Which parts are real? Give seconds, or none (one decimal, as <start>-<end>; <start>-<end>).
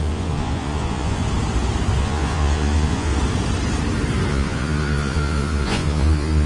1.2-2.0; 3.1-4.3